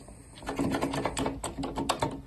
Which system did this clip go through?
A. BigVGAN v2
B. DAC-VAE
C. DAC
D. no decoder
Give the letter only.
D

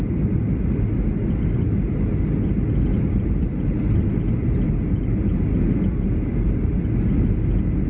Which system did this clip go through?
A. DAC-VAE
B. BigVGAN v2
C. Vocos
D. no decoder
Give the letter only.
D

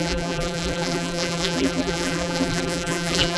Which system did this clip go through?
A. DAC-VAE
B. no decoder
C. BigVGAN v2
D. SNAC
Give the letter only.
C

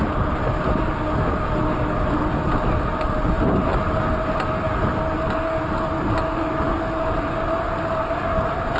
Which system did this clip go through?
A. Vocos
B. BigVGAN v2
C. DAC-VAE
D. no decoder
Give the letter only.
D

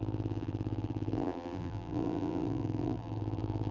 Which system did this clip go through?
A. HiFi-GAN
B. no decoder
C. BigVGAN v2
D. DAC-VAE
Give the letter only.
C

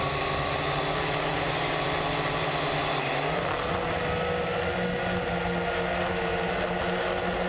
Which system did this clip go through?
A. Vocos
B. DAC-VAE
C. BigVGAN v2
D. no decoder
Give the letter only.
D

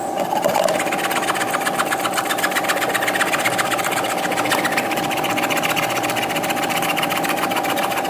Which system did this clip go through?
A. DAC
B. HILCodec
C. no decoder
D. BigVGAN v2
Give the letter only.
C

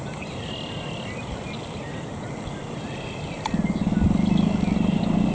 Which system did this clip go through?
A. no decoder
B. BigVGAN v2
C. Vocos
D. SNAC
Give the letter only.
A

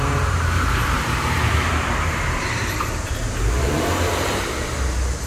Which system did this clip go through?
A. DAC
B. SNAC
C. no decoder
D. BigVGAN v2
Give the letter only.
D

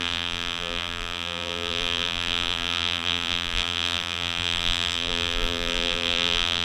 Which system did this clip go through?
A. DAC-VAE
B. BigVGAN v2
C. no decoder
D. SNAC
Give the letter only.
B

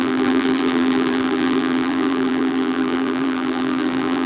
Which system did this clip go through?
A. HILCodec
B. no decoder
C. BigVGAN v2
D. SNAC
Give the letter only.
C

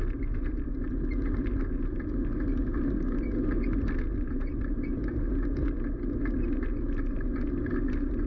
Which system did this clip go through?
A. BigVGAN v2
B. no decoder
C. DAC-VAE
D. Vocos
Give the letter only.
B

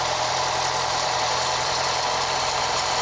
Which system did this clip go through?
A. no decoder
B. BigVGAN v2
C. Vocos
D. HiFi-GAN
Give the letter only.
B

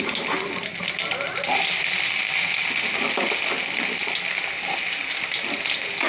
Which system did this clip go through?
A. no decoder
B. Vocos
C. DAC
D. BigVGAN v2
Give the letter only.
A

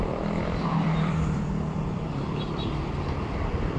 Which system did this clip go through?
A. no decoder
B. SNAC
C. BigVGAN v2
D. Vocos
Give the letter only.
C